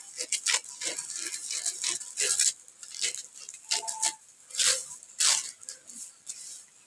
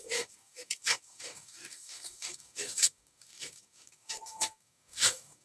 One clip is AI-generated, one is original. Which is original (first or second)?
first